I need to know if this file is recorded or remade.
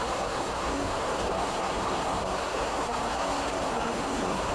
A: remade